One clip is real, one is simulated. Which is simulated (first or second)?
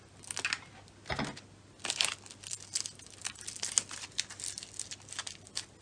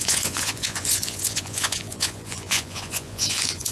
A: second